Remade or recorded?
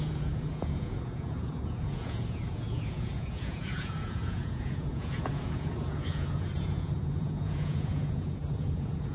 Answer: remade